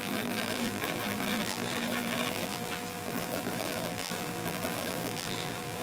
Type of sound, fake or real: fake